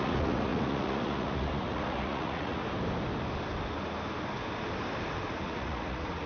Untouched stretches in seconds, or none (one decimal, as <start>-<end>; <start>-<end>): 2.6-5.3